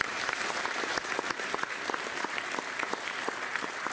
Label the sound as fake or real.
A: fake